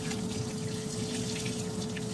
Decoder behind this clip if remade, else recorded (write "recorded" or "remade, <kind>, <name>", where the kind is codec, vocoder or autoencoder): recorded